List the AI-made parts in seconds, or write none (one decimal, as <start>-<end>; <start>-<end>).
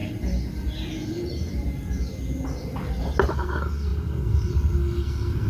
3.3-5.5